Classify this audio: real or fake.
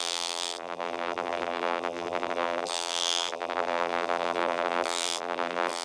fake